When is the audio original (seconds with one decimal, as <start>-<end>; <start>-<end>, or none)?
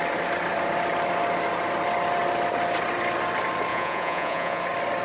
0.0-3.7; 4.6-5.0